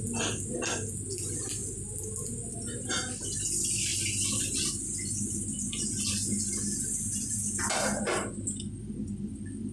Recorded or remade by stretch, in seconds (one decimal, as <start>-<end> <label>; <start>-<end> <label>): 0.0-9.7 recorded